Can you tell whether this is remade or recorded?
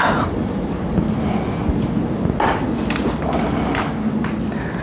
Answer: recorded